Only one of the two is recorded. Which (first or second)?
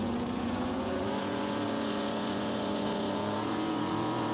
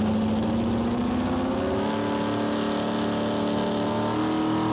second